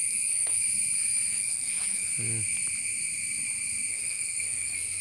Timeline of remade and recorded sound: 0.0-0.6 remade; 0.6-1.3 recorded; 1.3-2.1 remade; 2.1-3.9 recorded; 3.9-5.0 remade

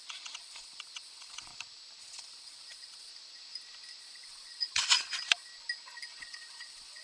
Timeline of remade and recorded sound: 0.0-1.5 remade; 1.5-2.0 recorded; 2.0-3.1 remade; 3.1-4.0 recorded; 4.0-5.5 remade; 5.5-6.2 recorded; 6.2-7.0 remade

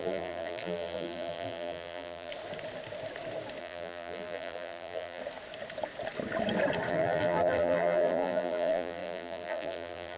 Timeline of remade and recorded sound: 0.0-2.3 remade; 2.3-3.6 recorded; 3.6-5.2 remade; 5.2-6.9 recorded; 6.9-10.2 remade

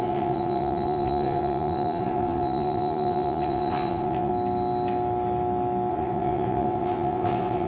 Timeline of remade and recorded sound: 0.0-4.3 remade; 4.3-5.9 recorded; 5.9-7.7 remade

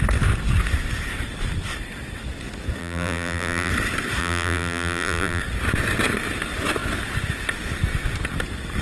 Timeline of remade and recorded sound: 0.0-2.8 recorded; 2.8-3.7 remade; 3.7-4.2 recorded; 4.2-5.4 remade; 5.4-8.8 recorded

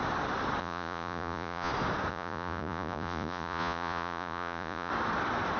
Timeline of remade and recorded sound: 0.0-0.6 recorded; 0.6-1.7 remade; 1.7-2.1 recorded; 2.1-4.9 remade; 4.9-5.6 recorded